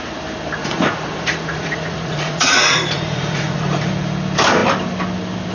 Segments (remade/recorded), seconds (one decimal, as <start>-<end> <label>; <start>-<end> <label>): 0.0-0.6 recorded; 0.6-3.9 remade; 3.9-5.5 recorded